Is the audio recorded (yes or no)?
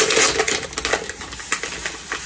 yes